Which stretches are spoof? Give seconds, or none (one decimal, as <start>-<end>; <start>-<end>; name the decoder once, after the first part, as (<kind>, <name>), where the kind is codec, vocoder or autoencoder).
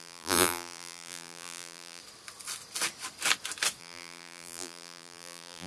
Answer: 0.0-2.0 (vocoder, BigVGAN v2); 3.8-5.7